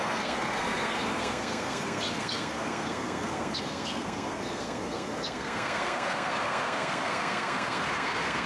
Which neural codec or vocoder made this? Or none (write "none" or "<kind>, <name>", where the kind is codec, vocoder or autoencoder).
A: codec, SNAC